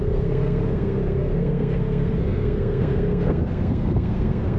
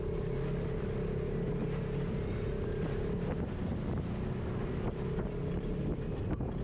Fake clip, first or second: first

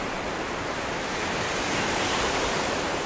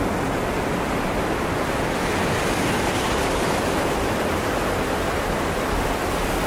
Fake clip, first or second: first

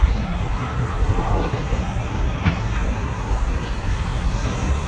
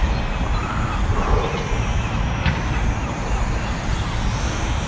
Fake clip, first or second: first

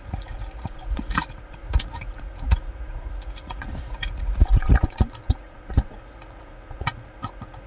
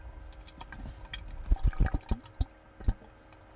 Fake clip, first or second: first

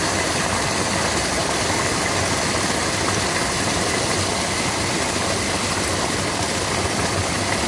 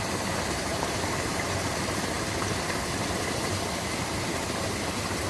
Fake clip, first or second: second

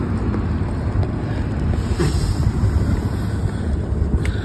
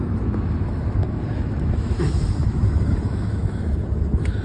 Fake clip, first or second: second